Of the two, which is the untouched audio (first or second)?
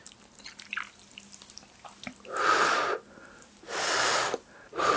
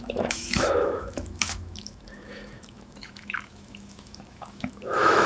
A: first